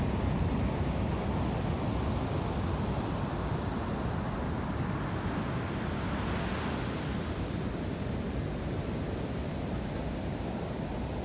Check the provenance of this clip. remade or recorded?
recorded